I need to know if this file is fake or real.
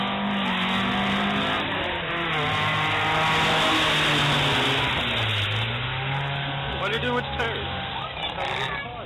real